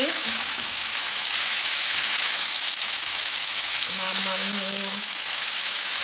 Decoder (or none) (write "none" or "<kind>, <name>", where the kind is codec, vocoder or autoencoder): autoencoder, DAC-VAE